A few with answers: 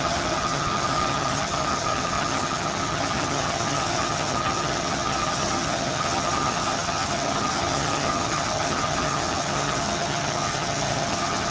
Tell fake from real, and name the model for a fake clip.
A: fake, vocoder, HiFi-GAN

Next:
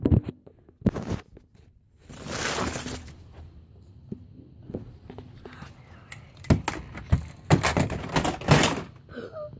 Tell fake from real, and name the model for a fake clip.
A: real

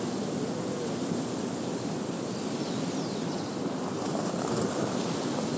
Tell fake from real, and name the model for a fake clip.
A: real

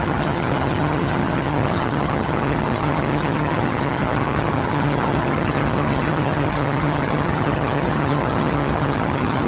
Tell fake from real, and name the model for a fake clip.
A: fake, vocoder, HiFi-GAN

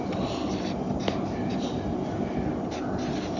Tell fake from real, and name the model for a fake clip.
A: real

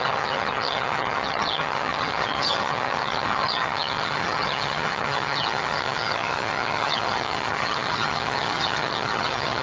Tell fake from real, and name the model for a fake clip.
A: fake, vocoder, HiFi-GAN